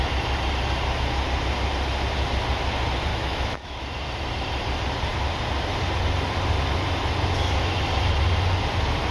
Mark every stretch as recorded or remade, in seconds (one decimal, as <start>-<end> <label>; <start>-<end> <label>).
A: 0.0-3.1 recorded; 3.1-3.8 remade; 3.8-9.1 recorded